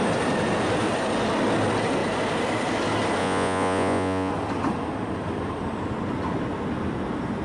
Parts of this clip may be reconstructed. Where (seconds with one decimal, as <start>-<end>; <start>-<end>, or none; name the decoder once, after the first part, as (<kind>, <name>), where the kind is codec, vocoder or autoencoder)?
3.2-4.3 (vocoder, Vocos)